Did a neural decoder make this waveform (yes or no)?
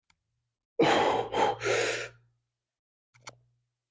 no